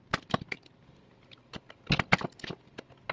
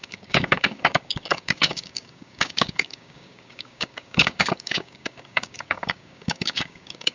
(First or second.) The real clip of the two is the first